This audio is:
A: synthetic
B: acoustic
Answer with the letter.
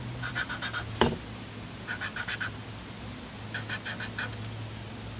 B